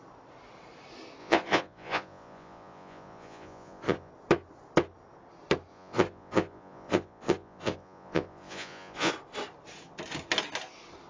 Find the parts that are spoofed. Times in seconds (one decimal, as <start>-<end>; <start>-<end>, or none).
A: 1.2-4.1; 5.7-9.1